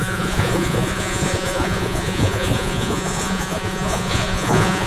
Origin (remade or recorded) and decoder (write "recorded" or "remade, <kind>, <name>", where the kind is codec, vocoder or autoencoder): remade, vocoder, Vocos